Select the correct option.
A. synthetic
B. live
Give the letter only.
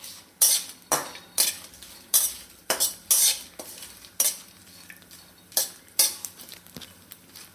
B